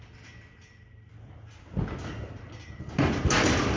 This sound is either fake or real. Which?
real